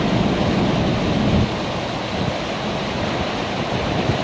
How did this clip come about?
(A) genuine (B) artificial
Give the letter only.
A